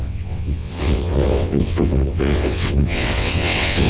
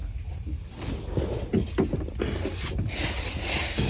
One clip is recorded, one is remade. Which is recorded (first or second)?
second